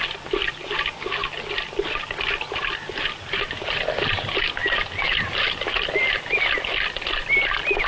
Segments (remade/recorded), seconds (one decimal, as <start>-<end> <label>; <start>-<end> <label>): 0.0-7.9 recorded